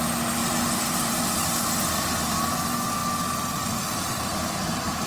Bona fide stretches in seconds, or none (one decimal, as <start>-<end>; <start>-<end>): 0.0-0.4; 1.2-3.0; 4.2-5.1

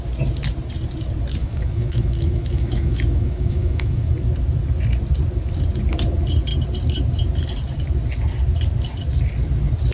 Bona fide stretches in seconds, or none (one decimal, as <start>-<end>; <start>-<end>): 0.0-1.4; 4.1-9.9

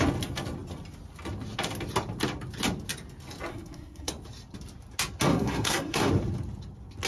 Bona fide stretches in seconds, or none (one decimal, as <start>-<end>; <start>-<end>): 0.0-3.5; 4.1-5.3; 6.1-7.1

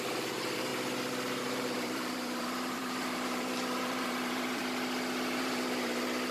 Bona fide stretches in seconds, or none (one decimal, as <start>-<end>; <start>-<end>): 0.7-1.4; 4.6-5.4

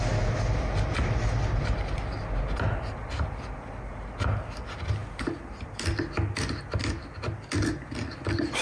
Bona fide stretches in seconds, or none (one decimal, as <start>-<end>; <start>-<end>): 0.0-8.6